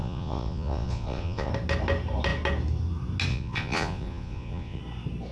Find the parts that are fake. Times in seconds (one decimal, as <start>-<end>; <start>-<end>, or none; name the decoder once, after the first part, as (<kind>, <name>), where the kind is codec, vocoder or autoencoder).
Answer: 0.0-1.5 (vocoder, Vocos); 3.3-4.8